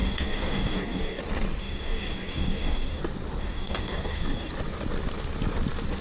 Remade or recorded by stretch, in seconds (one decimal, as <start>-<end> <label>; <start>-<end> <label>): 0.0-1.2 remade; 1.2-1.6 recorded; 1.6-3.0 remade; 3.0-3.4 recorded; 3.4-4.5 remade; 4.5-6.0 recorded